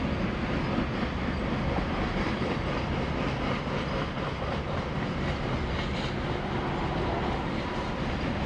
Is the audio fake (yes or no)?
no